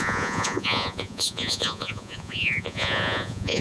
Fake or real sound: fake